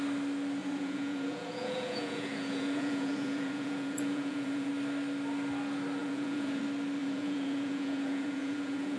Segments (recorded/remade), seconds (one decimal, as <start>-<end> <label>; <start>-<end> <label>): 0.0-0.6 recorded; 0.6-4.7 remade; 4.7-6.0 recorded; 6.0-6.6 remade; 6.6-7.0 recorded; 7.0-9.0 remade

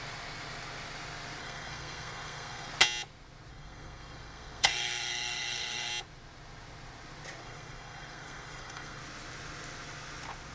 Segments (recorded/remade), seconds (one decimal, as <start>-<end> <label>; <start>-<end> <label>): 0.0-1.4 recorded; 1.4-2.7 remade; 2.7-3.5 recorded; 3.5-5.9 remade; 5.9-7.4 recorded; 7.4-9.0 remade; 9.0-10.5 recorded

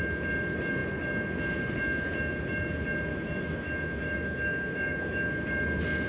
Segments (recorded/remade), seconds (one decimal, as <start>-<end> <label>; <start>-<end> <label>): 0.0-3.1 recorded; 3.1-5.4 remade; 5.4-6.1 recorded

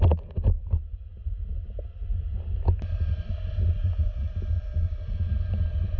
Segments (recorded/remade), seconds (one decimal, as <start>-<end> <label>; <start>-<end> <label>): 0.0-6.0 recorded